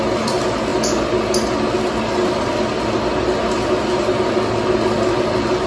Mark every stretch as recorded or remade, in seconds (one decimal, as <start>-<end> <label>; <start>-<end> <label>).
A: 0.0-5.7 recorded